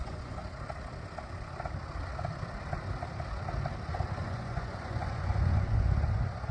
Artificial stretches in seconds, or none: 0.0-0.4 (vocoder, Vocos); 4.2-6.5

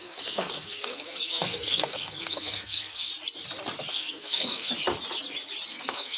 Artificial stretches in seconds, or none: 0.0-3.1 (codec, SNAC); 3.9-4.7; 5.7-6.2

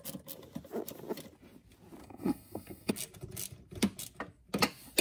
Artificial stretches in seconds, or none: 2.0-2.9 (codec, SNAC)

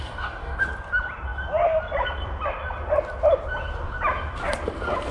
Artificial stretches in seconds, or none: 0.0-0.6 (codec, DAC)

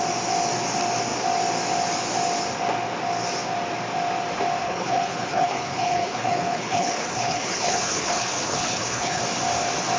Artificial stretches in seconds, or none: 4.6-9.2 (codec, HILCodec)

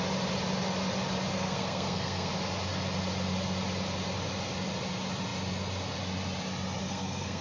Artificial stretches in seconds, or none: 1.3-2.3 (codec, SNAC); 6.8-7.4